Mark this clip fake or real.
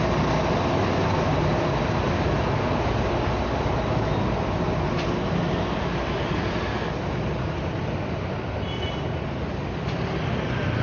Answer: real